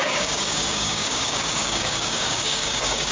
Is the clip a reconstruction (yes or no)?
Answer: yes